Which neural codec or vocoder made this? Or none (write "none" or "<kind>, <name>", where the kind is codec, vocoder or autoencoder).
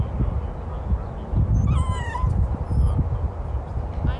none